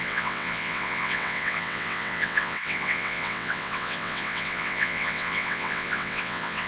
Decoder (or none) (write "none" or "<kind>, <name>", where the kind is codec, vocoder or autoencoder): vocoder, WaveNeXt